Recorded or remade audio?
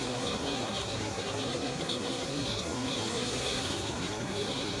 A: remade